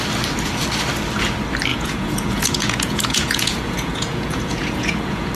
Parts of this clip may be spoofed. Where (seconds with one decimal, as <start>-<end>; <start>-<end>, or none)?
1.7-5.3